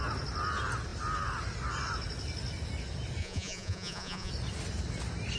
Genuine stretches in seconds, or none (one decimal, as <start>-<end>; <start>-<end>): 0.0-3.2; 4.3-5.4